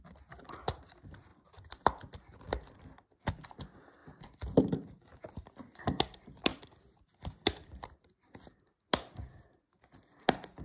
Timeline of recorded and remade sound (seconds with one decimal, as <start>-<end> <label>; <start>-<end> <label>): 0.0-10.6 recorded